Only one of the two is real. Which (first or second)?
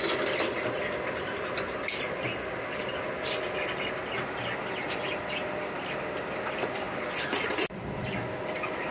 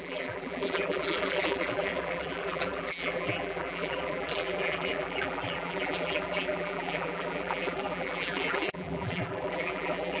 first